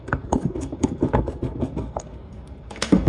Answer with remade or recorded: remade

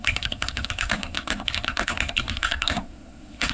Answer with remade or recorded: remade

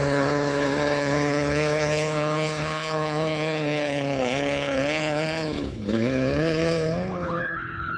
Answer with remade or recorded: remade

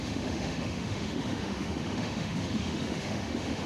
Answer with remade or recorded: remade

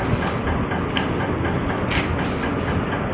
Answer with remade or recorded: recorded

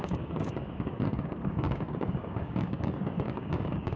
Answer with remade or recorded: remade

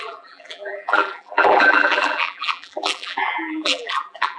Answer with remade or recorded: remade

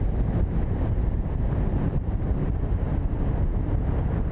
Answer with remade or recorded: remade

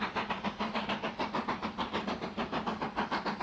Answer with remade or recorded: recorded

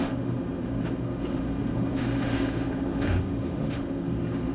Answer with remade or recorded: remade